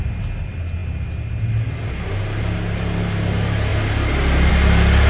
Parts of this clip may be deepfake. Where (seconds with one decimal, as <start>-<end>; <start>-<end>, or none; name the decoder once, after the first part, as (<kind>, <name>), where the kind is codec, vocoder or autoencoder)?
none